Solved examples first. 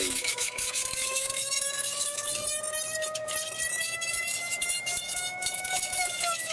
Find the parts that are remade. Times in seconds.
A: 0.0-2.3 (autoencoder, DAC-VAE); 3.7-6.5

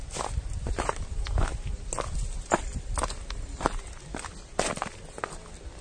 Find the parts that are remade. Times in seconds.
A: none